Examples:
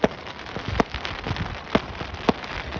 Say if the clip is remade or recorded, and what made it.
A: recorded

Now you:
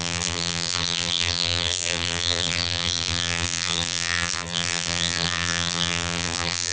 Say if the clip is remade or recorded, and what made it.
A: remade, vocoder, BigVGAN v2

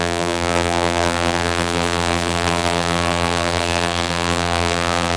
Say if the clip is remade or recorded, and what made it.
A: remade, vocoder, BigVGAN v2